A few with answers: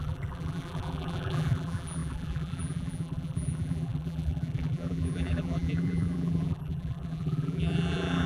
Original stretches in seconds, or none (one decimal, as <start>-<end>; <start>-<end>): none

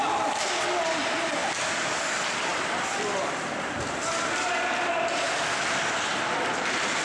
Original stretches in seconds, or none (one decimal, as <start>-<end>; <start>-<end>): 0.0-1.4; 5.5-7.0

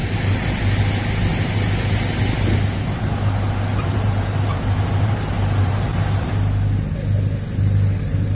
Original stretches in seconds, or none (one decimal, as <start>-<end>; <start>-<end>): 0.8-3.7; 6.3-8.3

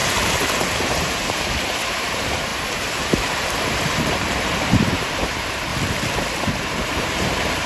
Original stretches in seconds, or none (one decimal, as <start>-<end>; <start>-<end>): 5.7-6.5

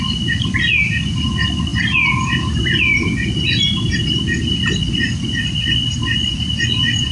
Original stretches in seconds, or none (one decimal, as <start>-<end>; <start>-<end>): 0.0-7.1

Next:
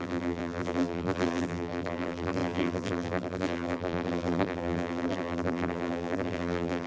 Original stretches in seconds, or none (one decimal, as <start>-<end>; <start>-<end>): none